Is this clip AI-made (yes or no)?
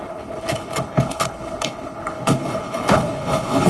yes